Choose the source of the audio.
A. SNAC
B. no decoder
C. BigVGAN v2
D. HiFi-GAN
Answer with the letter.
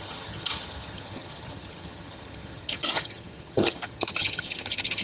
D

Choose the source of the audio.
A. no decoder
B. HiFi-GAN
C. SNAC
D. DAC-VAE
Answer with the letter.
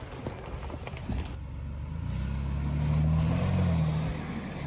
A